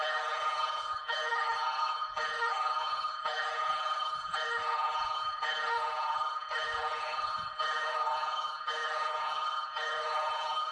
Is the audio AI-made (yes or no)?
yes